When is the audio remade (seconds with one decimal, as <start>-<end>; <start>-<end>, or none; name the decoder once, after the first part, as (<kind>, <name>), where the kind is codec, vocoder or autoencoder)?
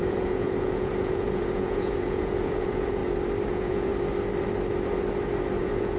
0.0-3.0 (vocoder, Vocos); 3.5-3.9; 5.6-6.0